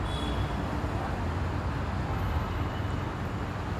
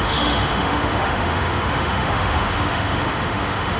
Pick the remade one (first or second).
second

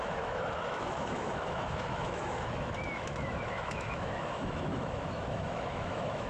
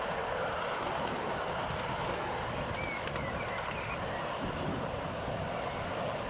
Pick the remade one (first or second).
first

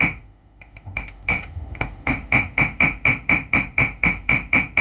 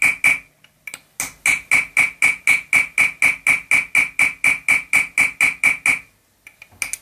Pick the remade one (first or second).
first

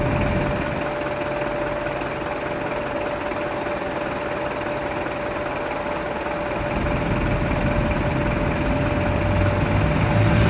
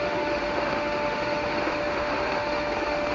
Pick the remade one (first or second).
second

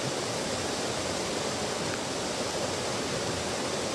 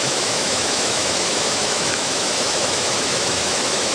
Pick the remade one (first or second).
second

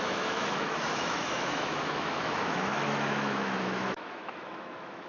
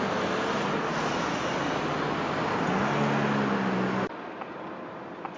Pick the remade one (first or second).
first